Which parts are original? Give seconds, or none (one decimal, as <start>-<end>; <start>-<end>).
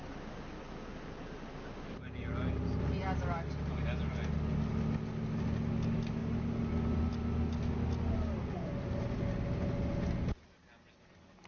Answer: 0.0-11.5